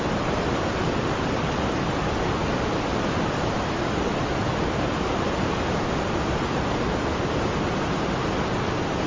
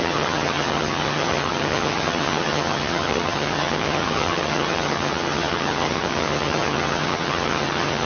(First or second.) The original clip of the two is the first